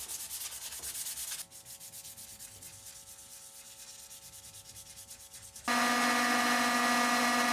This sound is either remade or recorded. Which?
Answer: recorded